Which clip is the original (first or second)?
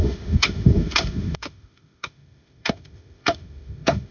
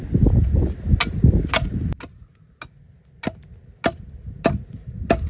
second